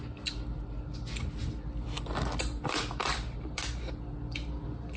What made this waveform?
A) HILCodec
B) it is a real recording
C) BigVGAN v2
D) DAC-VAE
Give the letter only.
B